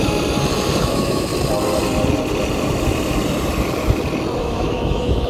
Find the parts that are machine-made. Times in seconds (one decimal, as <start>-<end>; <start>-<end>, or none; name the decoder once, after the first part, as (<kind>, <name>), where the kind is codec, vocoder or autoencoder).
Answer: 0.8-1.3 (autoencoder, DAC-VAE); 4.4-5.3